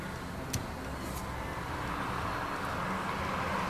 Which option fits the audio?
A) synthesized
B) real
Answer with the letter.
B